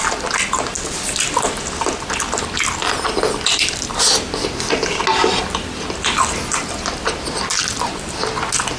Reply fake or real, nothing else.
real